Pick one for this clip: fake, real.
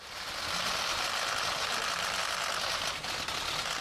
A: real